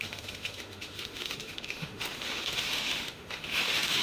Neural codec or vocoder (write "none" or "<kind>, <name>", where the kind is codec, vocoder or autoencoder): autoencoder, DAC-VAE